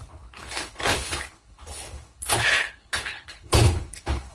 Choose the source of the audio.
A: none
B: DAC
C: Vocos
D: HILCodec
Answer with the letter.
D